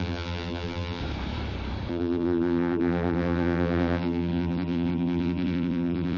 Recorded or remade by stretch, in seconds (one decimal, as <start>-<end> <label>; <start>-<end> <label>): 0.0-1.0 remade; 1.0-1.9 recorded; 1.9-6.2 remade

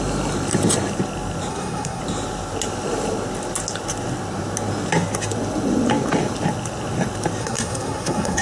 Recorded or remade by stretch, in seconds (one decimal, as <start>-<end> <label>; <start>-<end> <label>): 0.0-1.5 recorded; 1.5-2.0 remade; 2.0-7.4 recorded; 7.4-8.4 remade

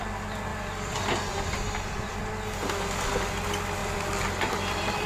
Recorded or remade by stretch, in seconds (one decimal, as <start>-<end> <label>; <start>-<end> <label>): 0.0-0.5 recorded; 0.5-1.6 remade; 1.6-3.8 recorded; 3.8-5.1 remade

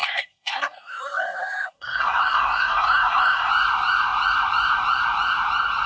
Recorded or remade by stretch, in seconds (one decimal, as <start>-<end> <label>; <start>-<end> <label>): 0.0-3.5 remade; 3.5-5.9 recorded

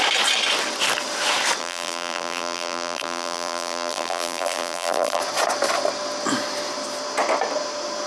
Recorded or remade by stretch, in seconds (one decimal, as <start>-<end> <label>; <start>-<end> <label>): 0.0-1.6 recorded; 1.6-5.2 remade; 5.2-8.1 recorded